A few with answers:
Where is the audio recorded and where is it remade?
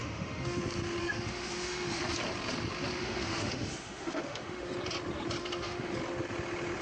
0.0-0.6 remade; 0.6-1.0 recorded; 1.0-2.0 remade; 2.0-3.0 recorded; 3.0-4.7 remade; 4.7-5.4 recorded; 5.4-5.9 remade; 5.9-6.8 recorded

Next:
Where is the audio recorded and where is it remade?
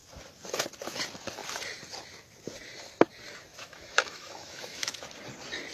0.0-3.5 recorded; 3.5-5.0 remade; 5.0-5.7 recorded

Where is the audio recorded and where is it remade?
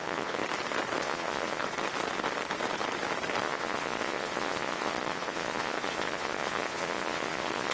0.0-0.4 remade; 0.4-1.0 recorded; 1.0-1.6 remade; 1.6-3.4 recorded; 3.4-7.7 remade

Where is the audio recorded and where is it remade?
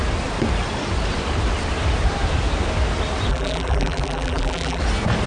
0.0-3.3 recorded; 3.3-4.8 remade; 4.8-5.3 recorded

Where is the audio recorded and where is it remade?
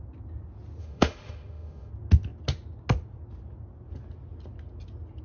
0.0-0.8 recorded; 0.8-1.9 remade; 1.9-5.2 recorded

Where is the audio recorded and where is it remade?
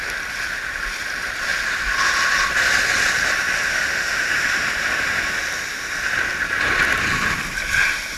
0.0-3.7 recorded; 3.7-4.3 remade; 4.3-8.2 recorded